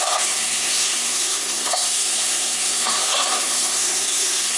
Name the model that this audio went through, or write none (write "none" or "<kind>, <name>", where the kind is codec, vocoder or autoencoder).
codec, SNAC